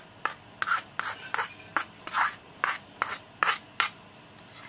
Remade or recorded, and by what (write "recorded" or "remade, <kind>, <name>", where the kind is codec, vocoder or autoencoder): recorded